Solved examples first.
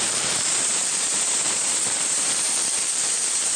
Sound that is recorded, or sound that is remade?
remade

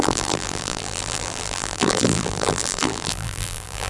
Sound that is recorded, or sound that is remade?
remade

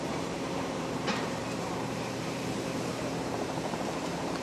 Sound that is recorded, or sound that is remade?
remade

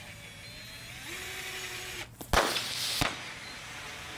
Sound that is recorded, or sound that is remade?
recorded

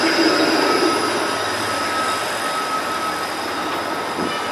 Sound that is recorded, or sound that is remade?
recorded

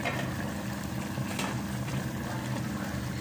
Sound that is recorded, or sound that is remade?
recorded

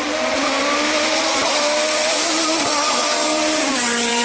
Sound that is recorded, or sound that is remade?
remade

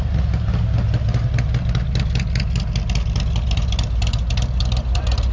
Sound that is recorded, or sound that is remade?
recorded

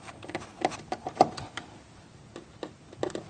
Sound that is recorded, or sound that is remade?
recorded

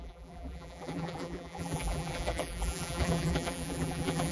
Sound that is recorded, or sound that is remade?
remade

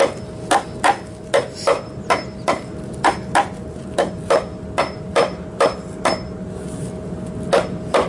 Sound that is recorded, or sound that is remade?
recorded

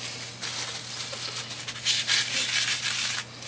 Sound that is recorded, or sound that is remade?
recorded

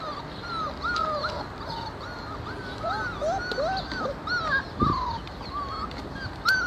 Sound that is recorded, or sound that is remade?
recorded